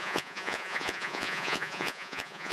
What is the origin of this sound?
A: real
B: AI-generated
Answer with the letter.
B